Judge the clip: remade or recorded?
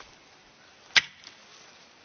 recorded